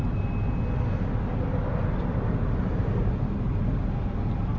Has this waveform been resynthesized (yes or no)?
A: no